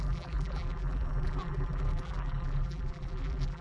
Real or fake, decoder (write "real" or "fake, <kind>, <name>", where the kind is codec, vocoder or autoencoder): fake, vocoder, BigVGAN v2